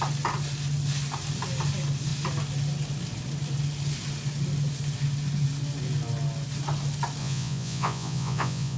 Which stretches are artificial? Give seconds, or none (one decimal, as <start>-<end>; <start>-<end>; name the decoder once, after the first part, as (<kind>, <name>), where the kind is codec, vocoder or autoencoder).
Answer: 7.2-8.8 (vocoder, Vocos)